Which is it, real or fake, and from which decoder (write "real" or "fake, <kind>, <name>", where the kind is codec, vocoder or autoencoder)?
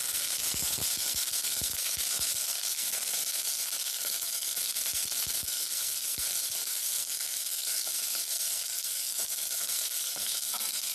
fake, codec, SNAC